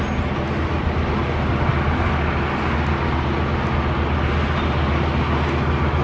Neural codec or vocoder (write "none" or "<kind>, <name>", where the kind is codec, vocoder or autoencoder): none